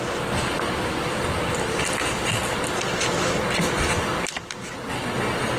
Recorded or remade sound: recorded